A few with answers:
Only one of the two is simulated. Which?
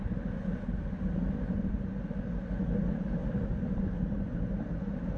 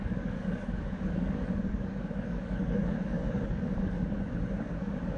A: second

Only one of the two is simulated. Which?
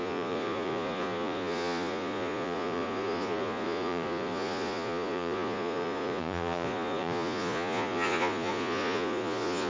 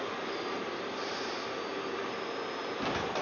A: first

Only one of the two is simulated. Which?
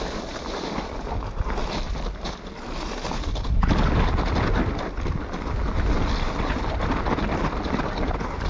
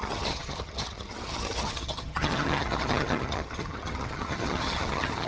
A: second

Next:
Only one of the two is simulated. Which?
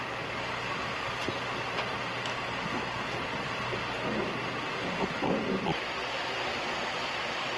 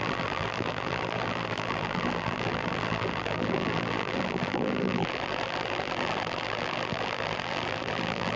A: second